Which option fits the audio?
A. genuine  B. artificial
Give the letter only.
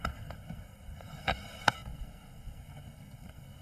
B